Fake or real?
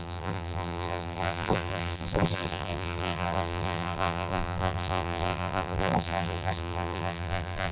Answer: fake